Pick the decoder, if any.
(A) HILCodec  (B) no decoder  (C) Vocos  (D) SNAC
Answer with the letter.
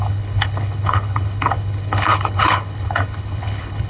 A